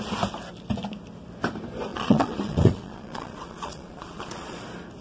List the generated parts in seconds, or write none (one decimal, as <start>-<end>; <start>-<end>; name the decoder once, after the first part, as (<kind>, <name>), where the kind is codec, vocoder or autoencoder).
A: 1.9-4.6 (vocoder, Vocos)